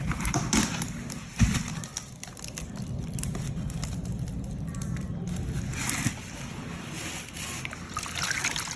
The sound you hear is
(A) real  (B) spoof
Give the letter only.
A